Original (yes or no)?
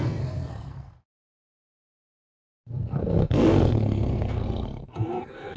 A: no